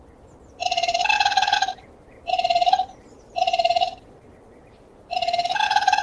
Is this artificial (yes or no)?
yes